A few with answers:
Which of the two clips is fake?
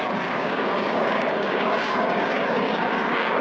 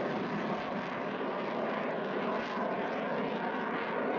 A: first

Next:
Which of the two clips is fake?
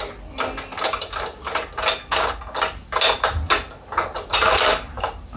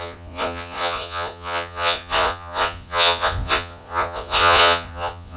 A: second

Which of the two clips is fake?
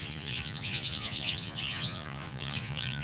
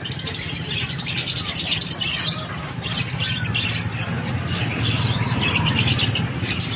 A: first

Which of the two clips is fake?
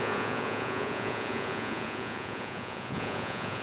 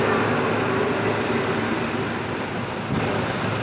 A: first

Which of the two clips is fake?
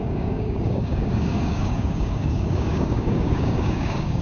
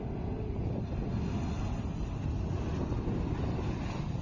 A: first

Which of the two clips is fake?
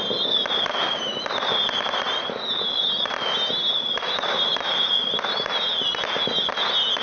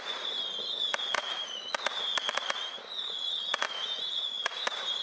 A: second